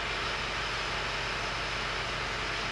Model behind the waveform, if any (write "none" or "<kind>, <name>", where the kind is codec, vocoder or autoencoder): none